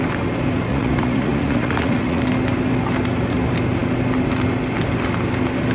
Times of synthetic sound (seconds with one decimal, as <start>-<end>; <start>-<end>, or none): 0.7-2.2